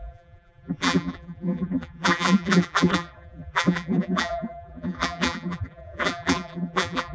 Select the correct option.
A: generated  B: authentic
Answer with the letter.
A